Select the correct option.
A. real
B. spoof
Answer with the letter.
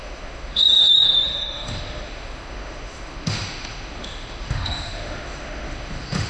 B